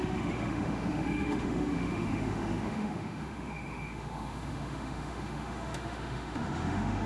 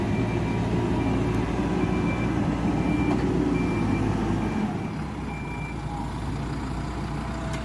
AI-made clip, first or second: first